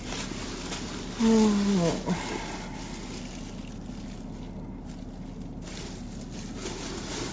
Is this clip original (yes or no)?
yes